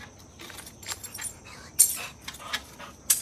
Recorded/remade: recorded